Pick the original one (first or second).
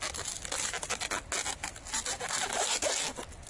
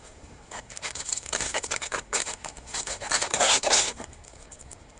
first